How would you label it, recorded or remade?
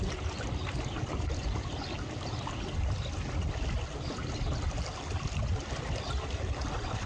recorded